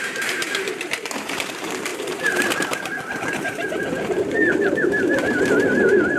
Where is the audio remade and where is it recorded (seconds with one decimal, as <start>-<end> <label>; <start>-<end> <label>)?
0.0-6.2 remade